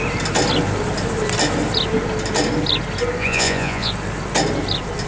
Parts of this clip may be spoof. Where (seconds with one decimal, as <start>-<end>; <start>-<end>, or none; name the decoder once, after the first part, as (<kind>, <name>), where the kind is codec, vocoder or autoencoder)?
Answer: 3.2-3.9 (vocoder, Vocos)